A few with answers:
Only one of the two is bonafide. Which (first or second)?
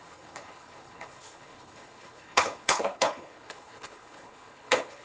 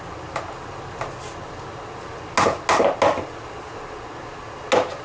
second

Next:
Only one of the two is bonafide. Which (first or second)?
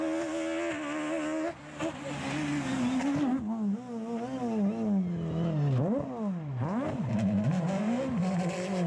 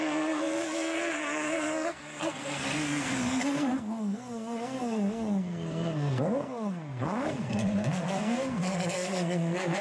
first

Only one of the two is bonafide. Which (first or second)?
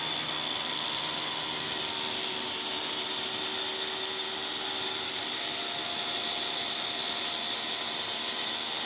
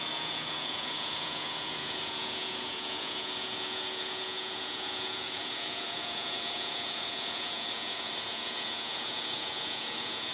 first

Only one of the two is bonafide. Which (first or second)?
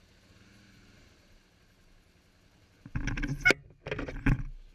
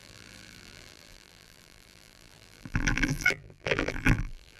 first